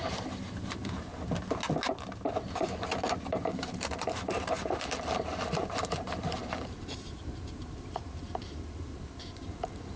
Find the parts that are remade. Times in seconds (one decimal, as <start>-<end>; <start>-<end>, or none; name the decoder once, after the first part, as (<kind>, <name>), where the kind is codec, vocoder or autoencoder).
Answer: 0.0-1.1 (vocoder, BigVGAN v2); 3.4-10.0